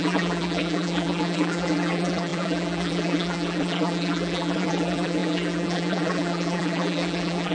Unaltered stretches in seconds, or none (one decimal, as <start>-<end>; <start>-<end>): none